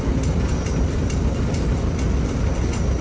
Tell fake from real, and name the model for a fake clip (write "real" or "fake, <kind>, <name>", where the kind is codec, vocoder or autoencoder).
real